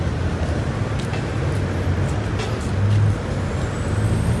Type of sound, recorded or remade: recorded